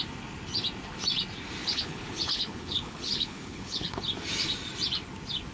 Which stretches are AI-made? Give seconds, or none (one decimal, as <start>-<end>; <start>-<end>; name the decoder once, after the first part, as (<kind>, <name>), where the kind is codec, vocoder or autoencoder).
1.6-4.0 (codec, HILCodec)